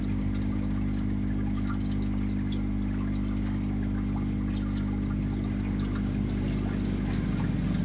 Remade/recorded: recorded